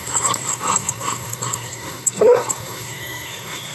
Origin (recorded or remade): remade